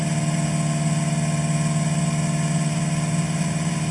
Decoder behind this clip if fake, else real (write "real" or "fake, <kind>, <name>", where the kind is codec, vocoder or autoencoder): real